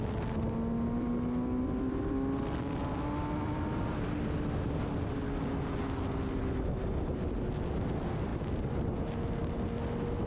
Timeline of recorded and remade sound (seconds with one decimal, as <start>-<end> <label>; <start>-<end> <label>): 0.0-10.3 recorded